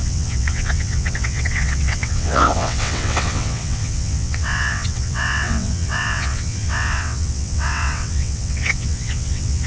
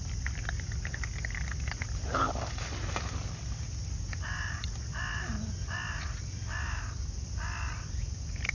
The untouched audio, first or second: second